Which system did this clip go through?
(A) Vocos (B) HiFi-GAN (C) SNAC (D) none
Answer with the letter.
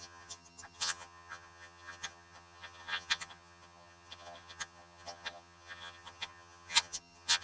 B